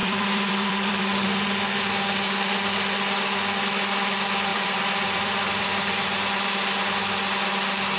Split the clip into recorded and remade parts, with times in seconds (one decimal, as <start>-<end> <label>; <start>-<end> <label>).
0.0-1.1 remade; 1.1-4.5 recorded; 4.5-5.7 remade; 5.7-8.0 recorded